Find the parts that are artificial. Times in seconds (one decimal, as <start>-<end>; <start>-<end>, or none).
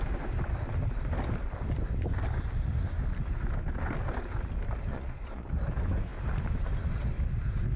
4.9-5.5